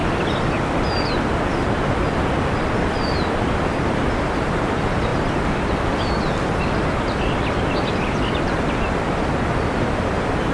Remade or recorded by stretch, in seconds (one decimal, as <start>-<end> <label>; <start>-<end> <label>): 0.0-10.5 recorded

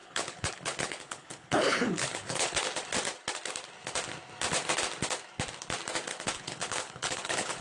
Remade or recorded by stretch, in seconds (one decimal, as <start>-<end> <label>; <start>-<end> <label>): 0.0-2.6 remade; 2.6-6.3 recorded; 6.3-7.6 remade

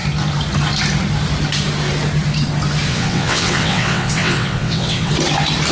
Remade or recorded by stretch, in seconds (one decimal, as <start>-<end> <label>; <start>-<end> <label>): 0.0-2.9 recorded; 2.9-5.1 remade; 5.1-5.7 recorded

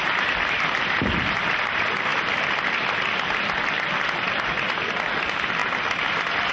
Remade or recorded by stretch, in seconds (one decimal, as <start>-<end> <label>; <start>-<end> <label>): 0.0-6.5 recorded

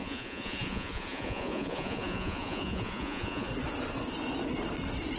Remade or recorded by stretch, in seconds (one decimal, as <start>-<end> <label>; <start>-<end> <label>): 0.0-3.5 remade; 3.5-5.2 recorded

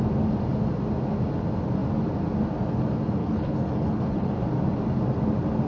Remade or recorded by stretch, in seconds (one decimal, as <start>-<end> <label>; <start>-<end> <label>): 0.0-3.2 recorded; 3.2-4.3 remade; 4.3-5.7 recorded